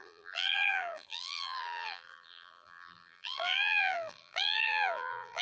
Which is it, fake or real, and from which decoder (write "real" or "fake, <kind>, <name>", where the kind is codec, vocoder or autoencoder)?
fake, vocoder, BigVGAN v2